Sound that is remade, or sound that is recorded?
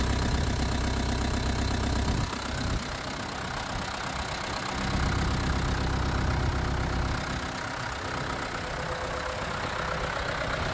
recorded